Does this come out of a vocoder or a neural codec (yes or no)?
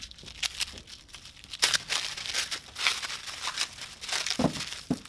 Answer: no